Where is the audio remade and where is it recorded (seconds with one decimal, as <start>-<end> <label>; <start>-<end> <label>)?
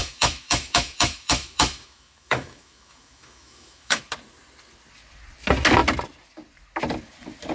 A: 0.0-4.0 remade; 4.0-7.5 recorded